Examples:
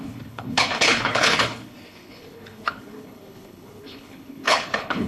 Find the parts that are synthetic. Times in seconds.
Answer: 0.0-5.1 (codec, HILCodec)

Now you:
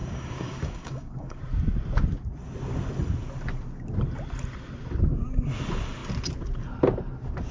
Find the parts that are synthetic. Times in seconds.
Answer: 0.0-1.4 (codec, DAC)

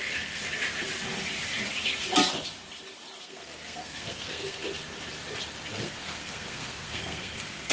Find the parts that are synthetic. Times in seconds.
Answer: 0.0-0.4 (codec, SNAC); 3.2-4.6; 5.7-7.7

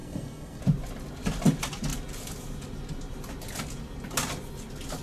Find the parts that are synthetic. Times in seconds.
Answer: 0.0-0.6 (codec, SNAC)